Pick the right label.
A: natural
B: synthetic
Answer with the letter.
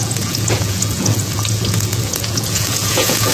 B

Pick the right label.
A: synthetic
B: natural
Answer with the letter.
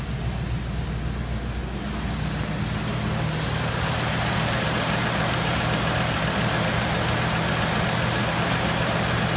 B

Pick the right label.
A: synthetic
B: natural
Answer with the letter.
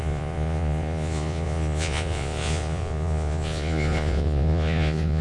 A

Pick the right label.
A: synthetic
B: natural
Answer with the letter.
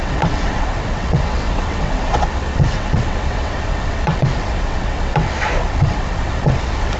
A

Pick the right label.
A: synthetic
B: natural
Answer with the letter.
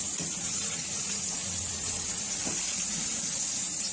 A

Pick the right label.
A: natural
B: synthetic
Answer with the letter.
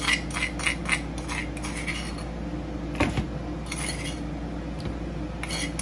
A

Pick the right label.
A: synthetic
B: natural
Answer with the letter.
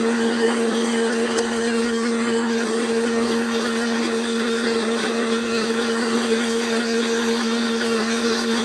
A